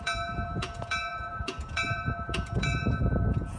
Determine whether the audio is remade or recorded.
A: remade